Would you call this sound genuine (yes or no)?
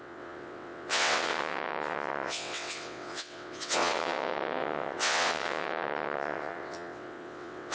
no